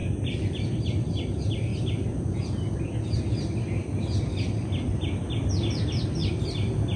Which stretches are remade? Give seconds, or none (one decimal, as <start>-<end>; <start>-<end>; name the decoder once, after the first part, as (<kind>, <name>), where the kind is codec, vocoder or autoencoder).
none

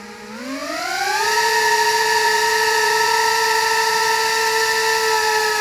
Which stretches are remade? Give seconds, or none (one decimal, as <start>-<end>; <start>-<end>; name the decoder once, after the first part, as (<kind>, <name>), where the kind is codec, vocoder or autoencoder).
0.6-4.0 (vocoder, BigVGAN v2)

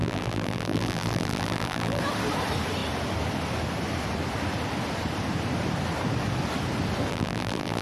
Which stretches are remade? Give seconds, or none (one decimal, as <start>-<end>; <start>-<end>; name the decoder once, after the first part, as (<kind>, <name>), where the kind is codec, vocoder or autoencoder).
0.0-2.0 (vocoder, BigVGAN v2); 7.1-7.8